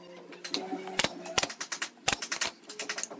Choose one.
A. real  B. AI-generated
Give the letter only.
A